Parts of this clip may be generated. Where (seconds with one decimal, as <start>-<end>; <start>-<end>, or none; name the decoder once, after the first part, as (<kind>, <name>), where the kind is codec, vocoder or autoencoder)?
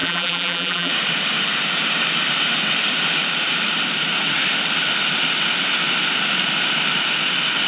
0.0-0.9 (vocoder, BigVGAN v2)